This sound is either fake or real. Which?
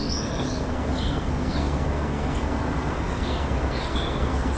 fake